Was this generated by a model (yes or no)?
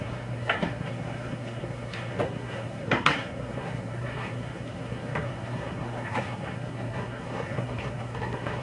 yes